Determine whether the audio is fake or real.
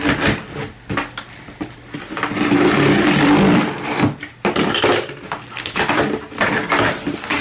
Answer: real